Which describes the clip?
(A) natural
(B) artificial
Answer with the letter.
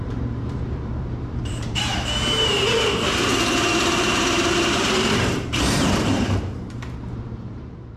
B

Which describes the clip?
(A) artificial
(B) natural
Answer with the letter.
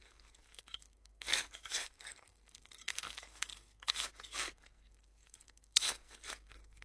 A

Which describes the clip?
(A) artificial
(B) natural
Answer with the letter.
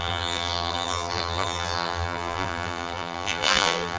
A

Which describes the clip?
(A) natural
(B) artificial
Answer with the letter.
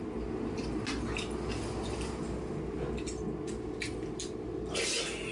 A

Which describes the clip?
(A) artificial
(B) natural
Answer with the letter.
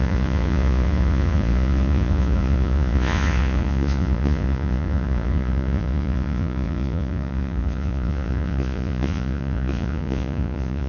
A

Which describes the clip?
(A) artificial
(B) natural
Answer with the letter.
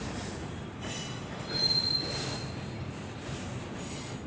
B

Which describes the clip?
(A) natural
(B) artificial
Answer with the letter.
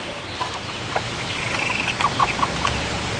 B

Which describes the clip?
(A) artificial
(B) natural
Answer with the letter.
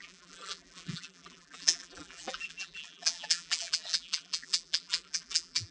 A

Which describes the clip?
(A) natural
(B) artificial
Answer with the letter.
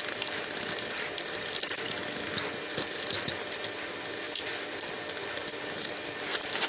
A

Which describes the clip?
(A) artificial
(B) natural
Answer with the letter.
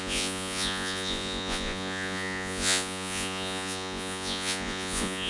A